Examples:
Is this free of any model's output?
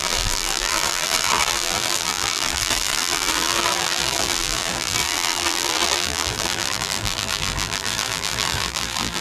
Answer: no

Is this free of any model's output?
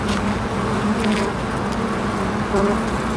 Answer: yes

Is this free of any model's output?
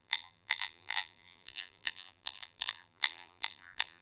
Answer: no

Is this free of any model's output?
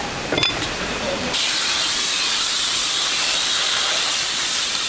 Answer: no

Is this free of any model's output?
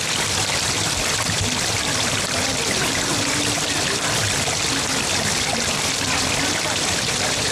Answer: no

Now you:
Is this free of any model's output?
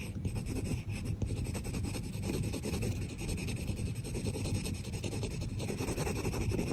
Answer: no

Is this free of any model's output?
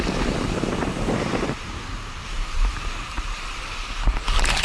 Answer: no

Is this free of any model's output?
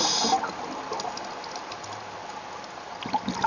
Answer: yes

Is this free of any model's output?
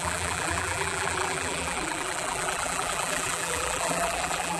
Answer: no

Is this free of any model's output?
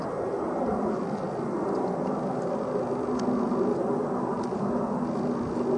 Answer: yes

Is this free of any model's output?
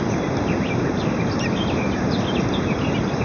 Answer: yes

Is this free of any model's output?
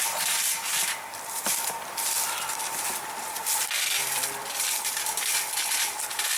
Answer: no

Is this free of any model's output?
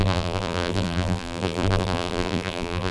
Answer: no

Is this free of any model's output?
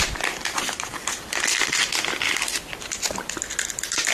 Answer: yes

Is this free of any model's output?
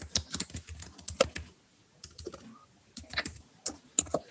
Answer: yes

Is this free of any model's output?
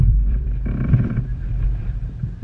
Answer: no